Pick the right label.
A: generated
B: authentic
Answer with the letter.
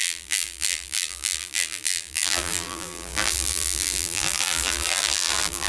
A